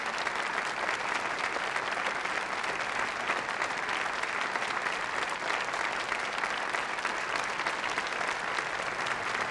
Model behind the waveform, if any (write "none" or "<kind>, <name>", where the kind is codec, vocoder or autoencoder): none